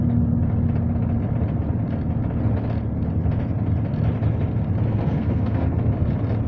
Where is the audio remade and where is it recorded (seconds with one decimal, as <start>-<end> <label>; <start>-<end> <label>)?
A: 0.0-4.9 recorded; 4.9-5.7 remade; 5.7-6.5 recorded